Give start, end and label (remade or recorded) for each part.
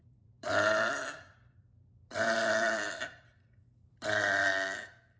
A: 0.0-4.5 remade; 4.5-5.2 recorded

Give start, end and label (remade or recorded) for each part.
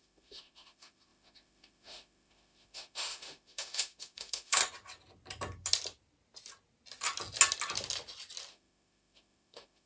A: 0.0-4.6 remade; 4.6-8.5 recorded; 8.5-9.9 remade